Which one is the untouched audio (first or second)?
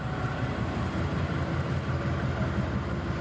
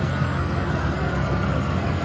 first